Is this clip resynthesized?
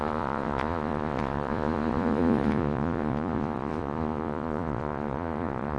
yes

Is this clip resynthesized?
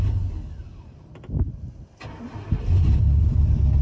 no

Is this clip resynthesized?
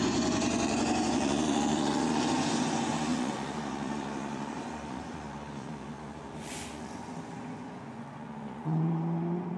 yes